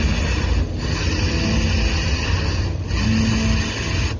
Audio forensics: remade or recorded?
recorded